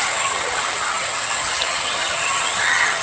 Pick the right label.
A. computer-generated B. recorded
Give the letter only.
A